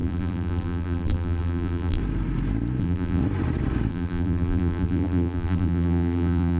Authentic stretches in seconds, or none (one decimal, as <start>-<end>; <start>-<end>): 2.0-2.8; 3.2-3.9